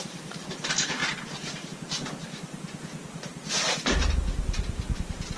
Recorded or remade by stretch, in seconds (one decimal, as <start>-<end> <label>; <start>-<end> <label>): 0.0-3.3 remade; 3.3-4.1 recorded; 4.1-5.4 remade